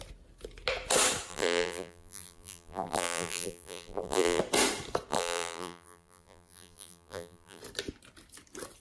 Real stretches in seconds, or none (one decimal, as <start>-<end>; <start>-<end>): 0.0-1.3; 4.4-5.1; 7.6-8.8